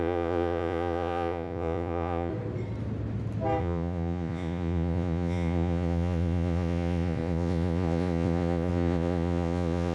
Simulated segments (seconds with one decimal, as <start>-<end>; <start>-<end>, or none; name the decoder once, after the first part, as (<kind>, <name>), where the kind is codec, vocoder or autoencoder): 0.0-2.3 (vocoder, Vocos); 3.6-9.9